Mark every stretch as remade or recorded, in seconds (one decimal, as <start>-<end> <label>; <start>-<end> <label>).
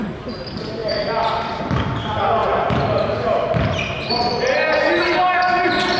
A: 0.0-0.8 recorded; 0.8-1.6 remade; 1.6-2.4 recorded; 2.4-4.1 remade; 4.1-6.0 recorded